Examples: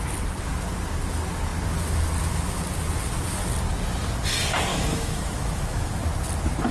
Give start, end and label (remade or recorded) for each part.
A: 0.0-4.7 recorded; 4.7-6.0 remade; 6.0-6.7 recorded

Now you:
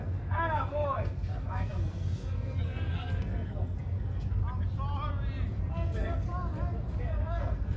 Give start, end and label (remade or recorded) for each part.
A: 0.0-4.4 remade; 4.4-5.7 recorded; 5.7-6.3 remade; 6.3-7.0 recorded; 7.0-7.8 remade

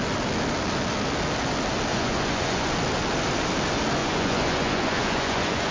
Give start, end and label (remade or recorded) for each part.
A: 0.0-1.9 recorded; 1.9-2.7 remade; 2.7-4.0 recorded; 4.0-5.7 remade

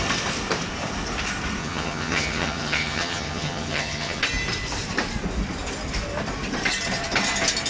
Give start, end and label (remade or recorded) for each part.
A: 0.0-1.6 recorded; 1.6-4.2 remade; 4.2-7.7 recorded

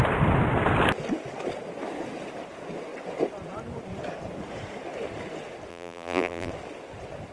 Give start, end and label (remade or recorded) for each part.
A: 0.0-5.7 recorded; 5.7-6.5 remade; 6.5-7.3 recorded